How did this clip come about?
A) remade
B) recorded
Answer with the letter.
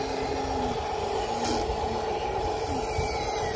B